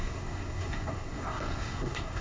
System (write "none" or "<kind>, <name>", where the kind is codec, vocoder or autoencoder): codec, SNAC